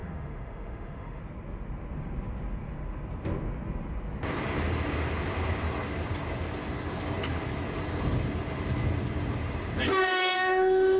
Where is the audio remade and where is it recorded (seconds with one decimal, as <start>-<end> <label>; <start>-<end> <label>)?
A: 0.0-1.2 remade; 1.2-10.0 recorded; 10.0-11.0 remade